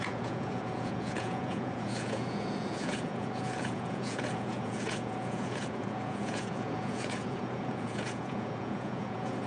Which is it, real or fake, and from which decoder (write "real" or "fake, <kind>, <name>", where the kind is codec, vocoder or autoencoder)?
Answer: fake, vocoder, Vocos